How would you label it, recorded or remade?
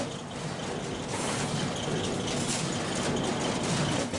recorded